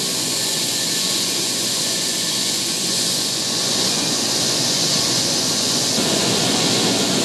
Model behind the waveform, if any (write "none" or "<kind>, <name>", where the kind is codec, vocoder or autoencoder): vocoder, Vocos